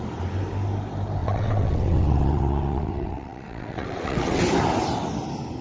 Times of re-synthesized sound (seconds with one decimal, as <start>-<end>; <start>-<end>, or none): 1.2-4.4